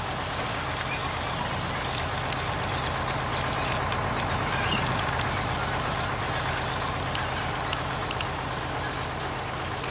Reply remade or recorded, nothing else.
recorded